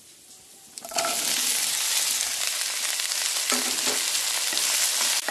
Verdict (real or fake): real